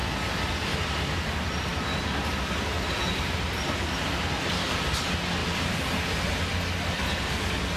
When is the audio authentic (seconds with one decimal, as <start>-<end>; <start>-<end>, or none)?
0.0-7.8